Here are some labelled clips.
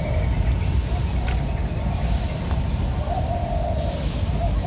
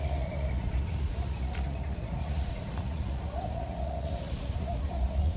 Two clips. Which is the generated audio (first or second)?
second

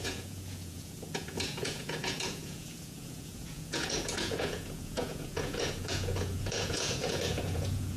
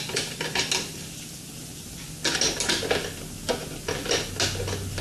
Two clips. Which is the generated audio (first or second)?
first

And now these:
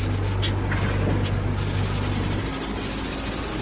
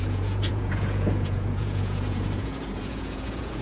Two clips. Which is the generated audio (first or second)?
second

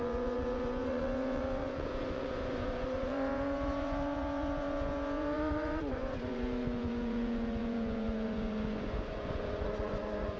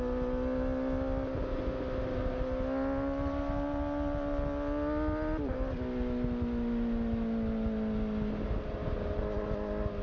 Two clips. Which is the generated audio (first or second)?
first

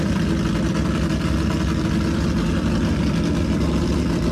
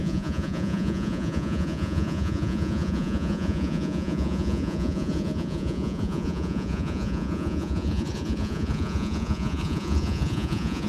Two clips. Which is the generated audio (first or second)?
second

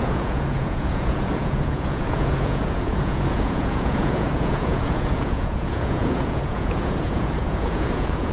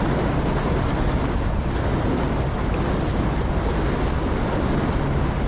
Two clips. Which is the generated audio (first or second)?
first